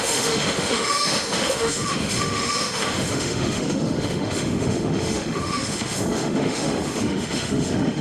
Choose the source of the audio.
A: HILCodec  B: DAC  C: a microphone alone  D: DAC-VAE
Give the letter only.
D